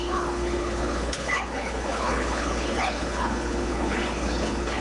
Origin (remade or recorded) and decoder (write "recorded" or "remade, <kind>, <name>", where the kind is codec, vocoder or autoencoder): remade, codec, HILCodec